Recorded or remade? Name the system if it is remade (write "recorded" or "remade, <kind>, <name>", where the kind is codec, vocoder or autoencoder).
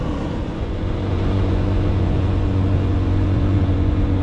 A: remade, vocoder, Vocos